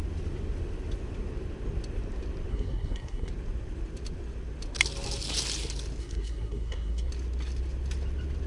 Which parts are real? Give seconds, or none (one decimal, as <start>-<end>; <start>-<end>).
0.0-2.5; 3.3-6.0; 7.1-8.5